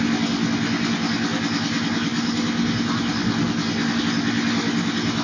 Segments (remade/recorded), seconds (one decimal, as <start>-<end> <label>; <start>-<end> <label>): 0.0-5.2 recorded